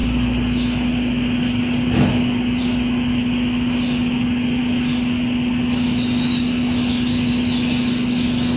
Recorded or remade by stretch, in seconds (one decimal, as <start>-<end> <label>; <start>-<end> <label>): 0.0-8.6 recorded

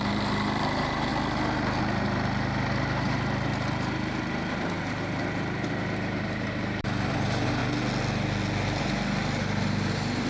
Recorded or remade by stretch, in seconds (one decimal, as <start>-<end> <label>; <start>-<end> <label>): 0.0-1.1 remade; 1.1-1.8 recorded; 1.8-7.6 remade; 7.6-8.8 recorded; 8.8-10.3 remade

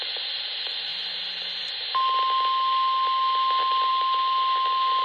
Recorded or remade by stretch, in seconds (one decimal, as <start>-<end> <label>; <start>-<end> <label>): 0.0-5.0 recorded